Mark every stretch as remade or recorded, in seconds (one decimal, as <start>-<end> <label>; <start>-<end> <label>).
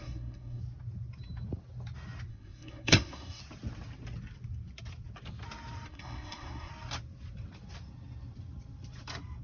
0.0-0.6 remade; 0.6-2.3 recorded; 2.3-3.4 remade; 3.4-5.9 recorded; 5.9-6.7 remade; 6.7-9.4 recorded